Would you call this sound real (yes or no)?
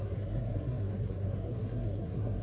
no